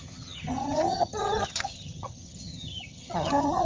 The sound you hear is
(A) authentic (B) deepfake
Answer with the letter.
B